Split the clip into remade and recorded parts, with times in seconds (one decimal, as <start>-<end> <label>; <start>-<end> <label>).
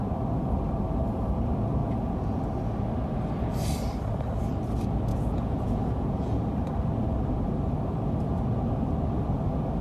0.0-1.8 recorded; 1.8-2.4 remade; 2.4-5.1 recorded; 5.1-6.4 remade; 6.4-9.8 recorded